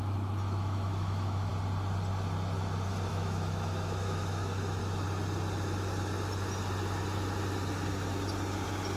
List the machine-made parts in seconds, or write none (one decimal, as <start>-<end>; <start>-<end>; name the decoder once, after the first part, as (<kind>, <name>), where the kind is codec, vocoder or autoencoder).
0.0-1.5 (autoencoder, DAC-VAE); 3.1-4.8